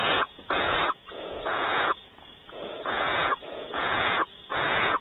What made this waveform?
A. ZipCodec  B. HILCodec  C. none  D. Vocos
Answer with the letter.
D